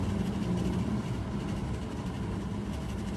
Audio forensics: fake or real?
real